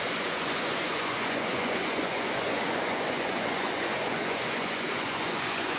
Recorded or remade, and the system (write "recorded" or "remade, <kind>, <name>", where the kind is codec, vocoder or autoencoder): remade, vocoder, Vocos